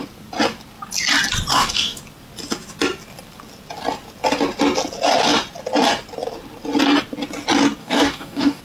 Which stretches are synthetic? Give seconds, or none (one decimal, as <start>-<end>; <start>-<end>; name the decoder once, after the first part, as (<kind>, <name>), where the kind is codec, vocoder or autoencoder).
1.5-2.0 (codec, DAC); 7.8-8.6